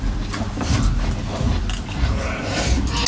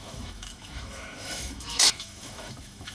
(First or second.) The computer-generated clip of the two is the second